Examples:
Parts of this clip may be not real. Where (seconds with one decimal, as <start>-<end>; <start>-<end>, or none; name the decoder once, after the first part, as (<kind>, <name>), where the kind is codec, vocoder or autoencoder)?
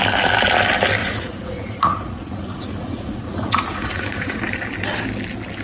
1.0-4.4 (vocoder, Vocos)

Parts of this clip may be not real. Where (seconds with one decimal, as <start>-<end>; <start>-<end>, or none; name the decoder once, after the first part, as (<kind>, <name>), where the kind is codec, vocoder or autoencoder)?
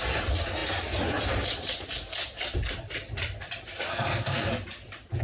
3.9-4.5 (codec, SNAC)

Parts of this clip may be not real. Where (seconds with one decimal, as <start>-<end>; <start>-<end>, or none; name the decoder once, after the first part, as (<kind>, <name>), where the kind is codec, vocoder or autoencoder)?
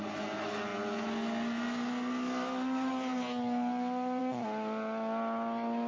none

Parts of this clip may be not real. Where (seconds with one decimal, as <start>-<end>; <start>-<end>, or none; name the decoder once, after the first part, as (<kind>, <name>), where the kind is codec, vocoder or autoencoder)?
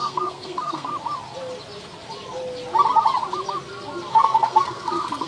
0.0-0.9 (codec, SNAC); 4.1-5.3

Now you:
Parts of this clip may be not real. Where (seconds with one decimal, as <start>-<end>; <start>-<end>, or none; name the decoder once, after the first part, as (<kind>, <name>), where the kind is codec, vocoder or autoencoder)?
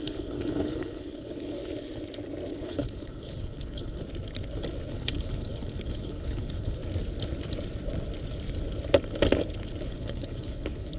0.0-1.6 (codec, HILCodec); 2.5-4.0; 4.9-6.8; 9.9-11.0